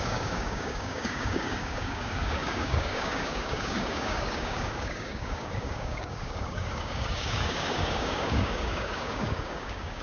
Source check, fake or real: fake